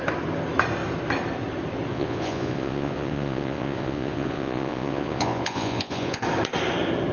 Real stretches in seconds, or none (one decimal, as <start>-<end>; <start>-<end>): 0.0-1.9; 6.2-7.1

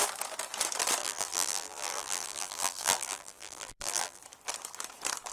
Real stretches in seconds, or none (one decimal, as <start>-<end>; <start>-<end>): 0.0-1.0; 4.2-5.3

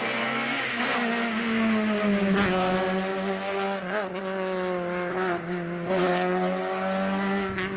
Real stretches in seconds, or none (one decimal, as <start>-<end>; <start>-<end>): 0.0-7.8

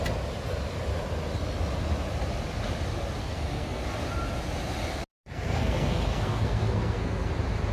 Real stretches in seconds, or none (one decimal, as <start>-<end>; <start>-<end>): 0.0-3.2; 3.8-5.1; 7.3-7.7